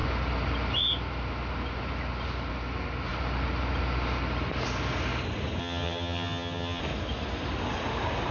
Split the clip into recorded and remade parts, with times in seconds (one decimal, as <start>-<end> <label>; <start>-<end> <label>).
0.0-5.6 recorded; 5.6-6.8 remade; 6.8-8.3 recorded